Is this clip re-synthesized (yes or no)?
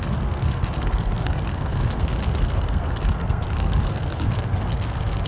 yes